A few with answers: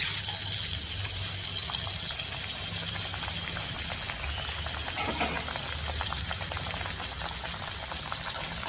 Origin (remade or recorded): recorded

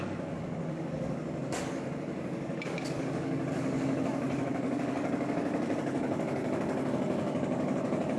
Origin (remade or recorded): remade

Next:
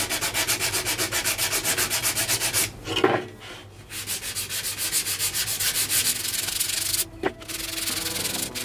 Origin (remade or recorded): recorded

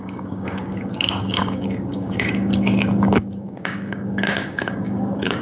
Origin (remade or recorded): remade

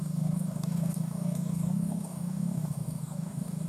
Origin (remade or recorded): remade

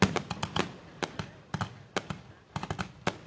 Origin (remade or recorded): recorded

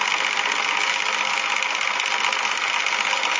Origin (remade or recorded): recorded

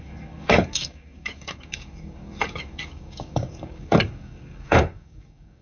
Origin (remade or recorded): remade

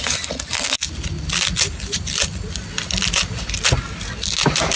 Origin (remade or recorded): recorded